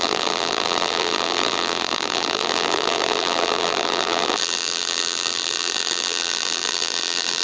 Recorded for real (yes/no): no